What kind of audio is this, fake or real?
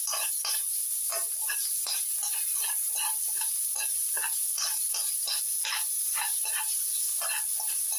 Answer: real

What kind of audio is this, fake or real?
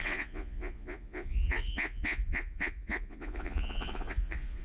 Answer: fake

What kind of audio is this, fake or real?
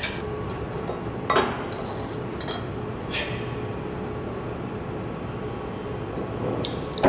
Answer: real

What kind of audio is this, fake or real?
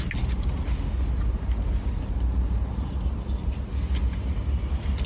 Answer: real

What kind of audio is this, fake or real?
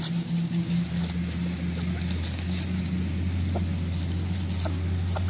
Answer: real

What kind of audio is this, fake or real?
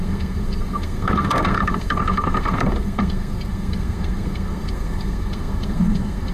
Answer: fake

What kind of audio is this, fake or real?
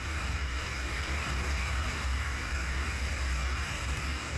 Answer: fake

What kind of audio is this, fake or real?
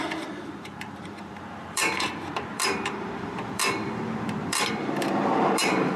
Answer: fake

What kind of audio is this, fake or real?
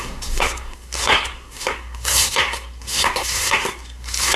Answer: fake